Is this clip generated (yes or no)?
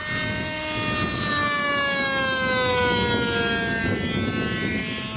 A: no